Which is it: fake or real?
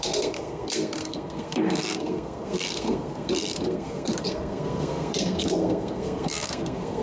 fake